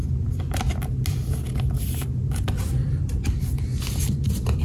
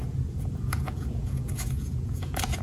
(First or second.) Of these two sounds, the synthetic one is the second